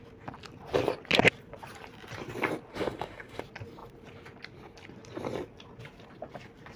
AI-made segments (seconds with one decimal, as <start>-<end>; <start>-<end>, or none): 2.7-3.4

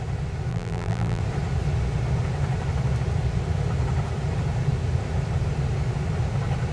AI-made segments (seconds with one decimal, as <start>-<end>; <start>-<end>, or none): 0.5-1.2